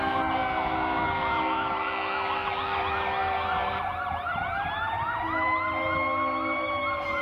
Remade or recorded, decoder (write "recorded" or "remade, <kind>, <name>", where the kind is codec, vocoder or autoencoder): recorded